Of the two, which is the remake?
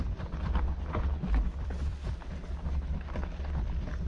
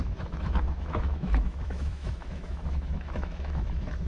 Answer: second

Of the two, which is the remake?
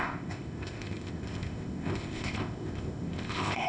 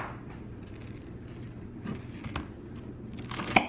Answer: first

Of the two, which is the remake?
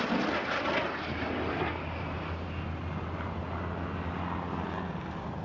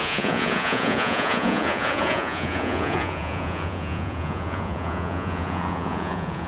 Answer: second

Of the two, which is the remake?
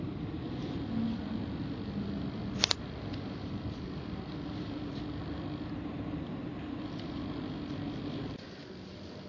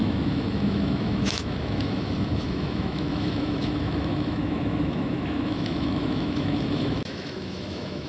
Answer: second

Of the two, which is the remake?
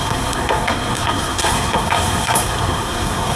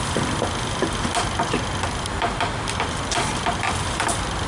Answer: first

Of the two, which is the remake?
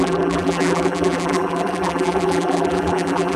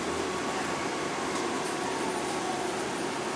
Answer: first